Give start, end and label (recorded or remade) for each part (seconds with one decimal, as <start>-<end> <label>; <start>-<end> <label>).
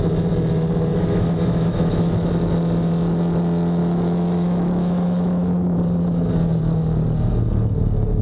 0.0-0.9 recorded; 0.9-2.3 remade; 2.3-3.8 recorded; 3.8-5.8 remade; 5.8-8.2 recorded